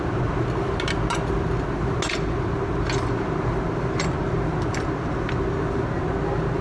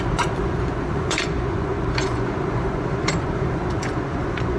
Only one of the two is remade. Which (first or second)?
second